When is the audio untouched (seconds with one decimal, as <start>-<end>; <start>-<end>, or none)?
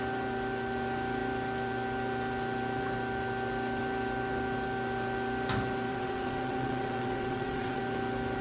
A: 0.0-5.9; 7.8-8.4